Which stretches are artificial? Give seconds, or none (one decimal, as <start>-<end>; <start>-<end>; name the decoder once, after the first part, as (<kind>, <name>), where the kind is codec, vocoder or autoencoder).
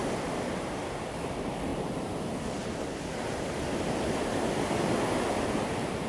none